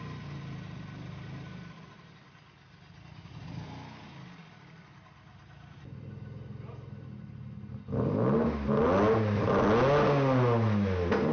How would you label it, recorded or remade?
recorded